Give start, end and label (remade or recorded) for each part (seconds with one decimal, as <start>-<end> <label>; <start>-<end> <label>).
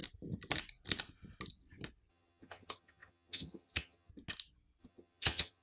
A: 0.0-2.1 recorded; 2.1-4.1 remade; 4.1-4.8 recorded; 4.8-5.6 remade